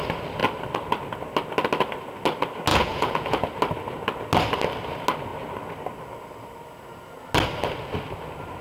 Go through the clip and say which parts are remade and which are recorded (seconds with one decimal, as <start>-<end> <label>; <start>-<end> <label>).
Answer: 0.0-2.7 recorded; 2.7-3.5 remade; 3.5-8.6 recorded